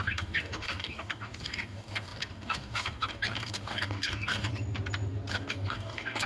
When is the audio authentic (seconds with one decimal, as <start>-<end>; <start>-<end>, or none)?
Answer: 4.5-5.3